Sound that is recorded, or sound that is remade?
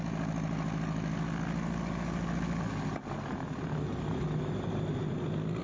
recorded